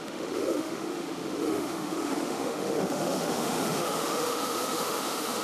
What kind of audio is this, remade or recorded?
remade